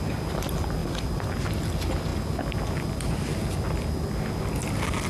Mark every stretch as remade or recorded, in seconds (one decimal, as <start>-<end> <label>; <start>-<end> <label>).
0.0-5.1 recorded